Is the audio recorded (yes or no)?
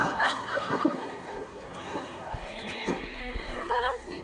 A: no